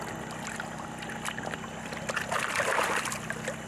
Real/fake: real